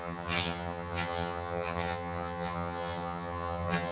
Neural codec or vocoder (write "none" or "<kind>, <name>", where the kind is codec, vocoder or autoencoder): vocoder, HiFi-GAN